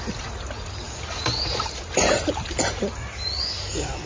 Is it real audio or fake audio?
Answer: real